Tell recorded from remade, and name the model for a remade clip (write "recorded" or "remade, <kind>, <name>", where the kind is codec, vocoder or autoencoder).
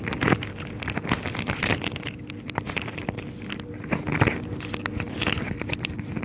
recorded